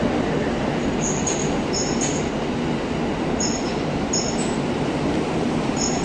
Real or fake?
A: real